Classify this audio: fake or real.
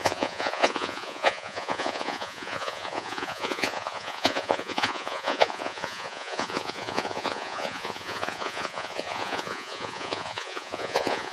fake